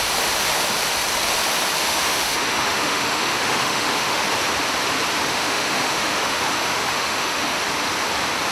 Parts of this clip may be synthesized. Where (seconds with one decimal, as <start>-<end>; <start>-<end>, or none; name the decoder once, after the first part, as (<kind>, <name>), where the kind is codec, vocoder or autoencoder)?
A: 1.8-4.2 (autoencoder, DAC-VAE); 5.3-7.6